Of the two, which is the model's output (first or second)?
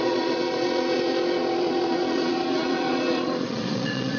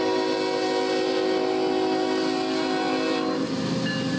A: first